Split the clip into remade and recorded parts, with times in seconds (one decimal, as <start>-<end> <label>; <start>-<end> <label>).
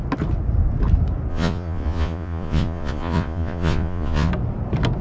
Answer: 0.0-1.3 recorded; 1.3-4.3 remade; 4.3-5.0 recorded